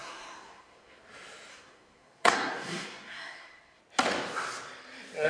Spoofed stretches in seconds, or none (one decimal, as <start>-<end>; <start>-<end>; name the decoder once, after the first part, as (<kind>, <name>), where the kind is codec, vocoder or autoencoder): 0.0-1.0 (codec, SNAC); 1.5-3.8